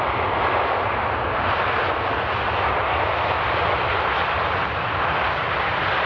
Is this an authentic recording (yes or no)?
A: yes